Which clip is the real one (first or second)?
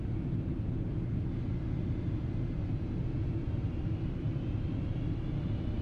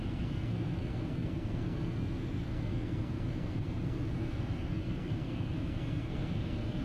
first